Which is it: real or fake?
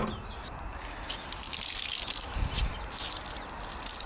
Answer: real